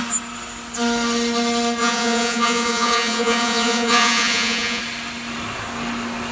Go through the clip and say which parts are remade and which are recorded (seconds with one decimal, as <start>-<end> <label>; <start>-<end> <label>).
0.0-1.8 recorded; 1.8-4.8 remade; 4.8-6.3 recorded